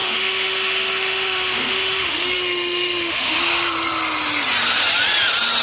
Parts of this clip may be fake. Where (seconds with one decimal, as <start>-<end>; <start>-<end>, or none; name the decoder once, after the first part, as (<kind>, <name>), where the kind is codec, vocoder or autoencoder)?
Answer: 0.0-3.4 (autoencoder, DAC-VAE)